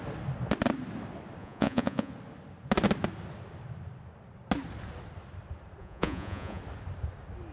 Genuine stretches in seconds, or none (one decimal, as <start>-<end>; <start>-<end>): 0.0-1.4; 2.1-5.8; 6.6-7.5